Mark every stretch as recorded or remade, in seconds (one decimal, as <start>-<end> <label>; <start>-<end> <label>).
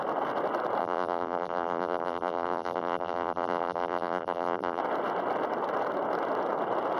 0.0-0.8 recorded; 0.8-4.8 remade; 4.8-7.0 recorded